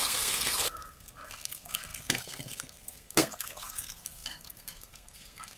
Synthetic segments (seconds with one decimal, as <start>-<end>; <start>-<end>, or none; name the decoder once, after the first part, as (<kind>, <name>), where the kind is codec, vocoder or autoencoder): 0.0-5.6 (codec, SNAC)